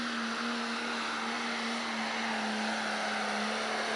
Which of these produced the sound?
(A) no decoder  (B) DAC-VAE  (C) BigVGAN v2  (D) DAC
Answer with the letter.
A